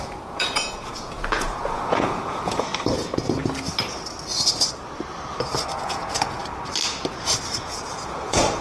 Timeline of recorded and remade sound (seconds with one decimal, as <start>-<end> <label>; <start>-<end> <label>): 0.0-2.7 remade; 2.7-5.8 recorded; 5.8-6.4 remade; 6.4-7.6 recorded; 7.6-8.6 remade